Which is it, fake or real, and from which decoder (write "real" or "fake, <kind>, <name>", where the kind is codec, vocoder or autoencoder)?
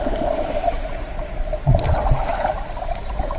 real